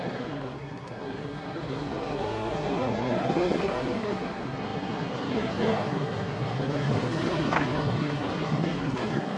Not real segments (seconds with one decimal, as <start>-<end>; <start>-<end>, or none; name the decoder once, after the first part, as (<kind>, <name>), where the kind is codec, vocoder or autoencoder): 0.0-9.4 (codec, SNAC)